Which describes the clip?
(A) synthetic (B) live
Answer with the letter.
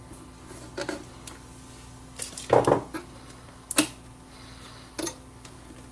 B